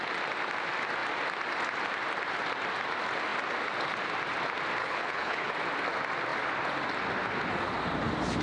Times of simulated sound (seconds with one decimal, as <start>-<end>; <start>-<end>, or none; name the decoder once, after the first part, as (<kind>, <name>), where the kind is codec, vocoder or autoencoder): 4.8-5.5 (codec, HILCodec)